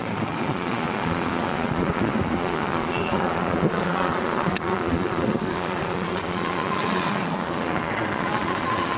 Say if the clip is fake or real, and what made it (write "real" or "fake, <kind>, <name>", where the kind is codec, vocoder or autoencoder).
fake, vocoder, Vocos